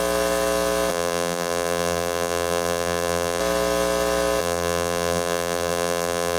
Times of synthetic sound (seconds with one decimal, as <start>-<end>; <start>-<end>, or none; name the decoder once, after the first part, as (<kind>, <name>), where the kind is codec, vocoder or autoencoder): 0.9-3.4 (vocoder, BigVGAN v2); 4.4-6.4